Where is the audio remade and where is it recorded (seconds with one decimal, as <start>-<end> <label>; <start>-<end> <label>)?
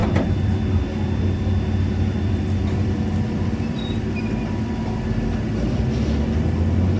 0.0-4.2 remade; 4.2-7.0 recorded